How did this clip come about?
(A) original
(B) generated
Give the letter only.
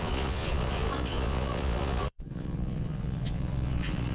B